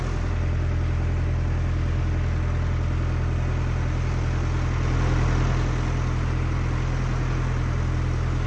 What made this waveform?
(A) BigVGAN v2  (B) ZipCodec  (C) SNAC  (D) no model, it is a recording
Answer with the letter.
D